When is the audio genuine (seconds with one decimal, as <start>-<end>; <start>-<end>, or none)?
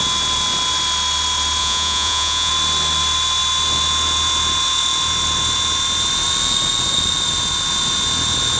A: 0.0-1.6; 2.5-8.6